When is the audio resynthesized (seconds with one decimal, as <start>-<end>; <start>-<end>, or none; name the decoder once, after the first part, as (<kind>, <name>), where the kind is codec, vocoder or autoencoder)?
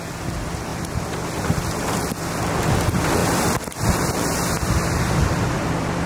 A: 0.7-1.9 (vocoder, BigVGAN v2); 3.2-6.1